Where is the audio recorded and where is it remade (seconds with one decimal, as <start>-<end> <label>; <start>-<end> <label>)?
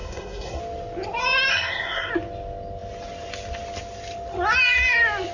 0.0-0.6 remade; 0.6-1.5 recorded; 1.5-2.1 remade; 2.1-5.3 recorded